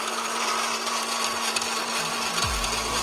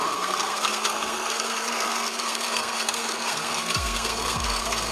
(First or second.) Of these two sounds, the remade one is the second